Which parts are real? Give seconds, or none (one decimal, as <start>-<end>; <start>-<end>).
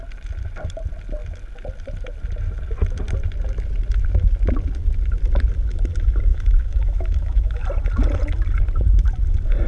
0.0-6.3; 7.6-9.7